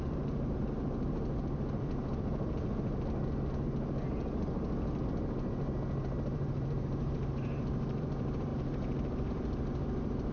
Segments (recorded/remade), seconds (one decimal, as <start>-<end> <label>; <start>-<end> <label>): 0.0-2.1 remade; 2.1-6.0 recorded; 6.0-10.3 remade